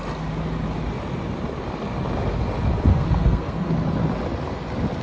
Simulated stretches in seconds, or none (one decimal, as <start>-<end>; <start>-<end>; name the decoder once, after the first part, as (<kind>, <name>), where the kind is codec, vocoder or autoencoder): 2.9-3.7 (codec, SNAC)